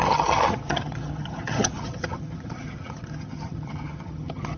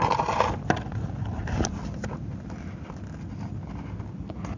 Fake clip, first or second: first